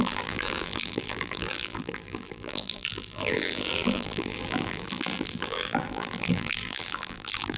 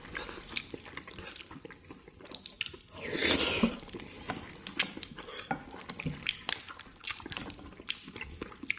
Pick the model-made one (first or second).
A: first